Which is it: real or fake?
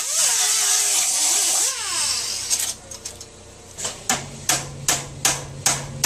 real